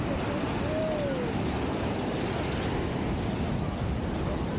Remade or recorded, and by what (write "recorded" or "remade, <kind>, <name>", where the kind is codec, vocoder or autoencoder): recorded